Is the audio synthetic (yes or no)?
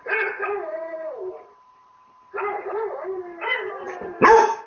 yes